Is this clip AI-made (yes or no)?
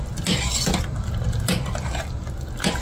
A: no